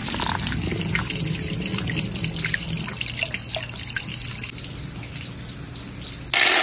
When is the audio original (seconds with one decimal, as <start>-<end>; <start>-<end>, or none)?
0.0-6.6